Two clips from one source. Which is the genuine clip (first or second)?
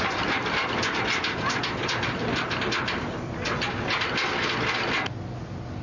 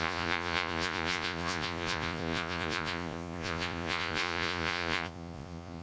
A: first